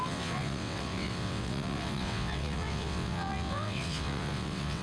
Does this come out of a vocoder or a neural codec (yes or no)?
yes